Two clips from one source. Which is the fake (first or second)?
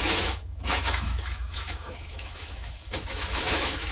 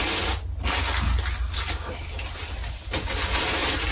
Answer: first